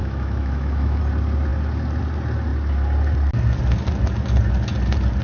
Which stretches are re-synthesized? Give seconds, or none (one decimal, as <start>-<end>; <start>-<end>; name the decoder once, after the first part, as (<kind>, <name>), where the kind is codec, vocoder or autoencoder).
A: 0.0-1.0 (autoencoder, DAC-VAE)